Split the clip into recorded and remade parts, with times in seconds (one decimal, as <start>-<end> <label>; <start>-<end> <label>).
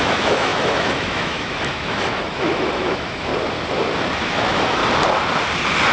0.0-3.3 remade; 3.3-4.2 recorded; 4.2-4.8 remade; 4.8-5.9 recorded